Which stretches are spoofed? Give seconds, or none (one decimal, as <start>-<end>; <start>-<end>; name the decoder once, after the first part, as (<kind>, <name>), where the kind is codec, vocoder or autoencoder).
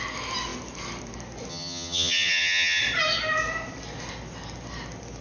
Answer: 1.5-2.8 (vocoder, HiFi-GAN)